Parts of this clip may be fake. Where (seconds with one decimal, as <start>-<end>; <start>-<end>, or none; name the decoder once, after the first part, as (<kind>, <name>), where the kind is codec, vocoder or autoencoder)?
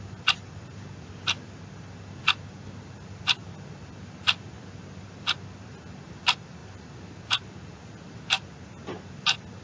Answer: none